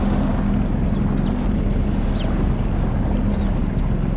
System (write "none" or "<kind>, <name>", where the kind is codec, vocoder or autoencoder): none